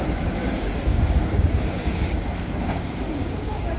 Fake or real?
fake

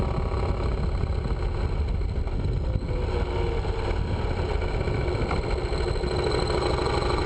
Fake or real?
real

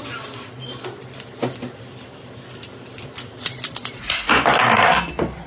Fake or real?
real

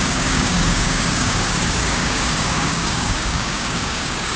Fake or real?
fake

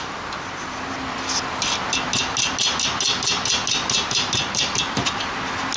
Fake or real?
real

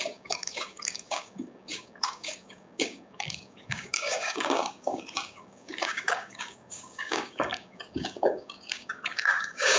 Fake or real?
fake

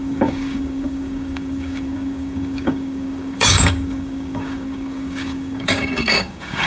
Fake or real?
fake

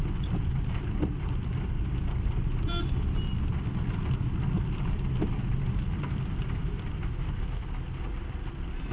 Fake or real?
real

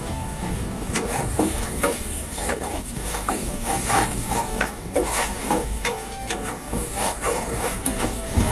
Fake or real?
fake